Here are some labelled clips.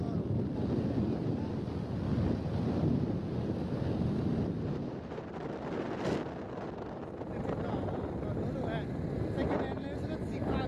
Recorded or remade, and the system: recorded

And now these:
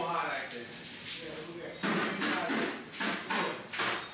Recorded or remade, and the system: recorded